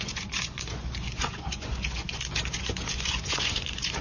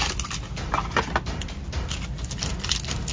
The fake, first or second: first